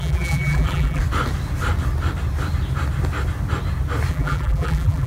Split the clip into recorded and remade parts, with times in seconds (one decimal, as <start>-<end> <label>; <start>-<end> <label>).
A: 0.0-1.0 remade; 1.0-4.1 recorded; 4.1-5.1 remade